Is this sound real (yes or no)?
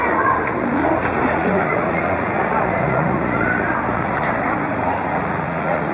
no